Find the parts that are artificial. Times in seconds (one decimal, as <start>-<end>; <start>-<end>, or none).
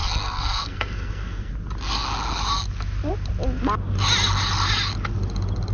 0.0-1.5